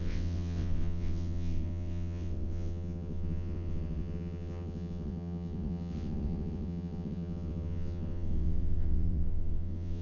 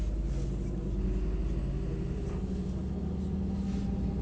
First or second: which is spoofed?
first